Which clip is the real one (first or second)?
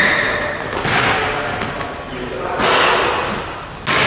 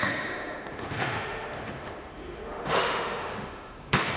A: first